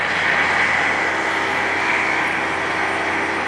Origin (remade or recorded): recorded